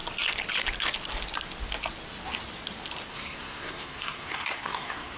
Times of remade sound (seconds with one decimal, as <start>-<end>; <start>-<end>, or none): 3.1-5.2